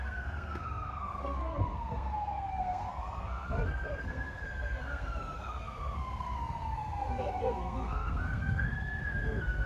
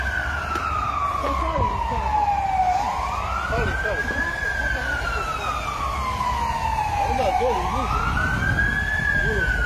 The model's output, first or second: first